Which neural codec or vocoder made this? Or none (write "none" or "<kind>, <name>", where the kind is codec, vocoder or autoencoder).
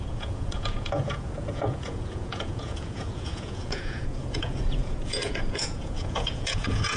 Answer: vocoder, Vocos